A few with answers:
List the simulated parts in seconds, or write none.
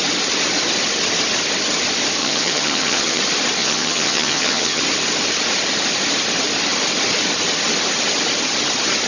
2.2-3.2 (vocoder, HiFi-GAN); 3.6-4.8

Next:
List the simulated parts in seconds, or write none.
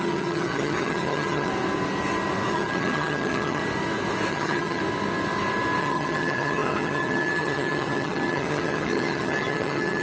0.0-1.5 (vocoder, HiFi-GAN); 2.5-3.6; 4.3-4.8; 5.8-10.0